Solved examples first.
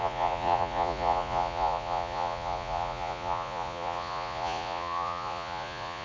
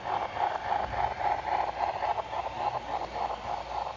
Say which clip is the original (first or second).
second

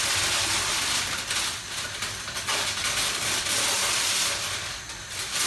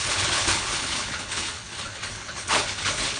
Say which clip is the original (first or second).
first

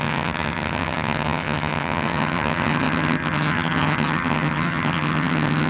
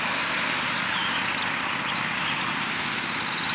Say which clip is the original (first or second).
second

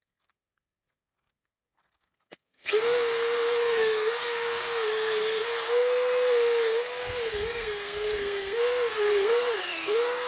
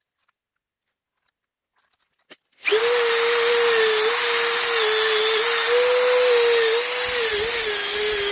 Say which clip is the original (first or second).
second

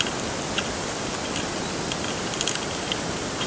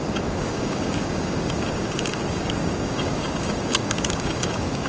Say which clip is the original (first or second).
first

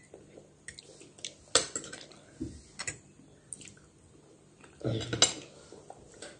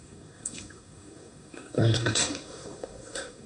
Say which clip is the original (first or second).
first